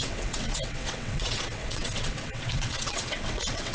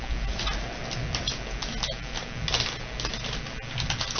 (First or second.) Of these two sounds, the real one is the second